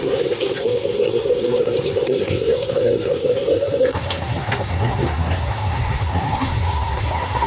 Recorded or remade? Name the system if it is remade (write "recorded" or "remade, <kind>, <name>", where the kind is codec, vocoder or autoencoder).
remade, codec, SNAC